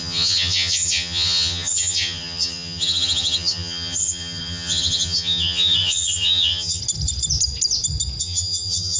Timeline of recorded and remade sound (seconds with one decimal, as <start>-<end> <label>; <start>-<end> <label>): 0.0-6.8 remade; 6.8-8.2 recorded; 8.2-9.0 remade